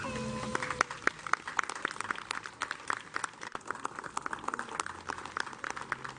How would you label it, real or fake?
real